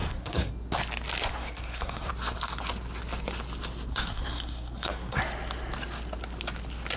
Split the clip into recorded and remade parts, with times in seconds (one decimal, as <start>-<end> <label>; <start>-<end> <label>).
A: 0.0-0.5 remade; 0.5-1.3 recorded; 1.3-2.1 remade; 2.1-3.9 recorded; 3.9-5.2 remade; 5.2-7.0 recorded

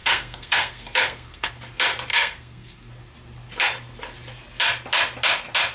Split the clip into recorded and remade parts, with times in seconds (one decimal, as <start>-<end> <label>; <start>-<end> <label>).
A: 0.0-1.5 remade; 1.5-2.1 recorded; 2.1-2.9 remade; 2.9-5.7 recorded

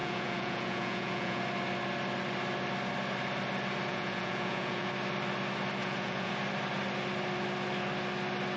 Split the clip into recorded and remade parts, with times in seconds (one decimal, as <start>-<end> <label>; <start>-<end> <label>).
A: 0.0-1.4 remade; 1.4-3.9 recorded; 3.9-4.9 remade; 4.9-5.8 recorded; 5.8-6.3 remade; 6.3-8.6 recorded

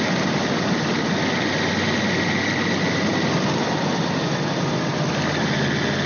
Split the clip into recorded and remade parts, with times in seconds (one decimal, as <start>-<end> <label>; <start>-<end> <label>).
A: 0.0-6.1 recorded

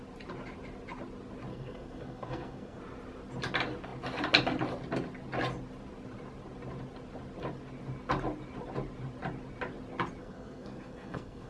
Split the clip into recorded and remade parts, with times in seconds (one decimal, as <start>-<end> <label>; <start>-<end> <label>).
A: 0.0-1.5 recorded; 1.5-2.8 remade; 2.8-10.2 recorded; 10.2-11.5 remade

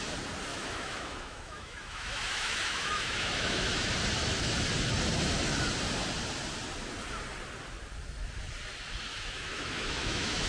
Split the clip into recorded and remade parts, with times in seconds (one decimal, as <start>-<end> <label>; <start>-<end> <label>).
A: 0.0-0.5 recorded; 0.5-3.9 remade; 3.9-9.1 recorded; 9.1-10.5 remade

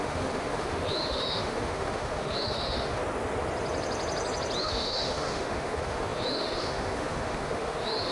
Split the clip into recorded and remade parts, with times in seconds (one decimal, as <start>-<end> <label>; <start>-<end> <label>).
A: 0.0-3.0 remade; 3.0-4.6 recorded; 4.6-8.1 remade